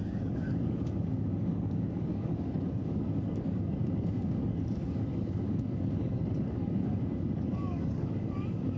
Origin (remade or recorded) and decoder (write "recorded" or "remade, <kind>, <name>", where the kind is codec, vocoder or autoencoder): remade, codec, DAC